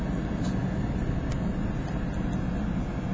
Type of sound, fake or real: real